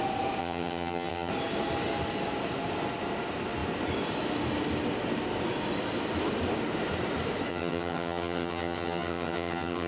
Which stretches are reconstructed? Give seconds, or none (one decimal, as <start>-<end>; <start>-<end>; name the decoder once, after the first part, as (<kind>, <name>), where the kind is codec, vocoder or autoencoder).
0.4-1.3 (vocoder, HiFi-GAN); 7.5-9.9